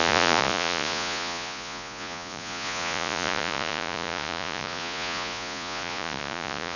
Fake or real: fake